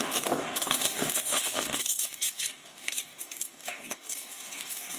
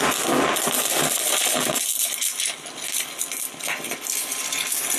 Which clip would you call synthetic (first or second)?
first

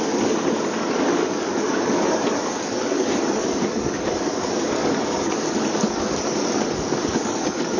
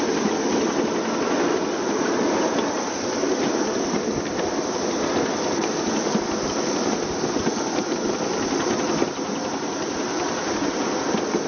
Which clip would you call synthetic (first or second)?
first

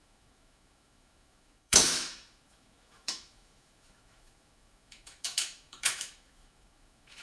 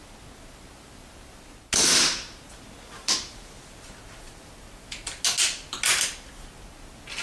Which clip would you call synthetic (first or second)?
first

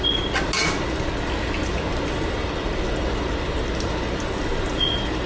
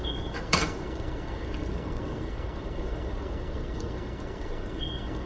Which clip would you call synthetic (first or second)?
second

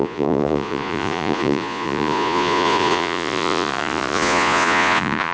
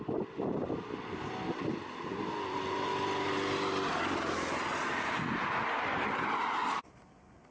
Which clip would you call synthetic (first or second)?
first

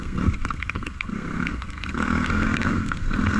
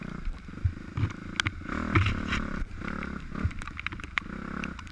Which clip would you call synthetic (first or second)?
first